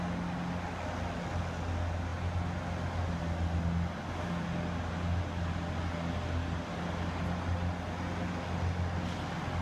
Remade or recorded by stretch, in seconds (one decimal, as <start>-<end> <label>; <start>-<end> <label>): 0.0-9.6 recorded